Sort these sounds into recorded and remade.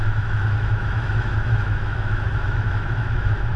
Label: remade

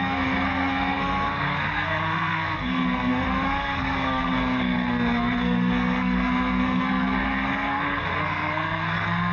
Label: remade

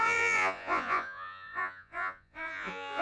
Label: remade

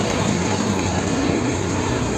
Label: remade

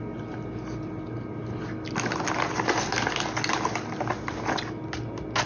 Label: recorded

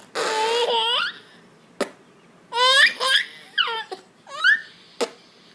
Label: recorded